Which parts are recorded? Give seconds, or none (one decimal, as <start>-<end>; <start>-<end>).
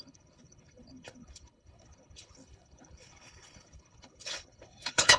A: none